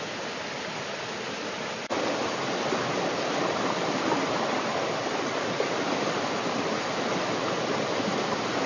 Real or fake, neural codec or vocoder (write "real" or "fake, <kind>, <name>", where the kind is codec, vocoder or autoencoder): real